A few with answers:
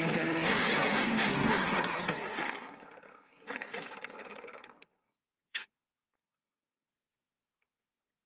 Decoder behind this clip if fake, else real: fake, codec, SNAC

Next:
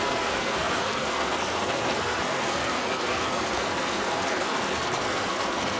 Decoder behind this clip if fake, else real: fake, codec, SNAC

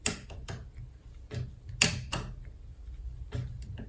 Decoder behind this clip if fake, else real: real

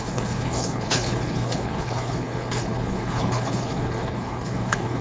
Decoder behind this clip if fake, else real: fake, codec, HILCodec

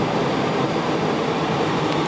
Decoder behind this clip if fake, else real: real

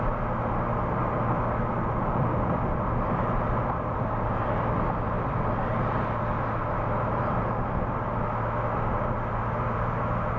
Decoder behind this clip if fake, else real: real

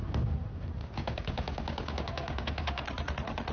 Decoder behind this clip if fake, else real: real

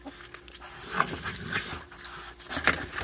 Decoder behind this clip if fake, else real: real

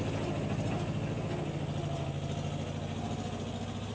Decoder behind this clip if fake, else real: real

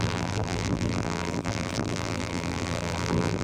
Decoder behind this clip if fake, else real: fake, vocoder, BigVGAN v2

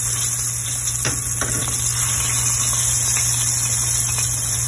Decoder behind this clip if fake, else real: real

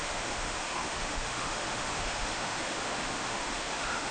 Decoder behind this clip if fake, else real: fake, autoencoder, DAC-VAE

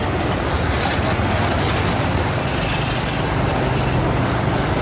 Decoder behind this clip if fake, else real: real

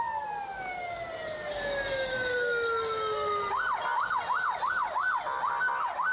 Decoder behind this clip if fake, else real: real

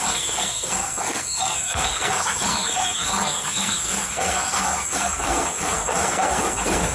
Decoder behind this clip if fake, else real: fake, codec, SNAC